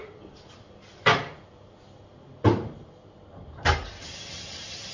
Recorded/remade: recorded